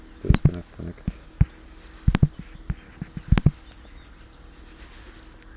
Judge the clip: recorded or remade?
recorded